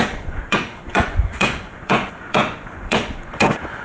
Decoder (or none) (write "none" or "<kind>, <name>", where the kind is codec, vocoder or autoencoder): vocoder, Vocos